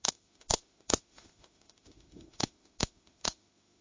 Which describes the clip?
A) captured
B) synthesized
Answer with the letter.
B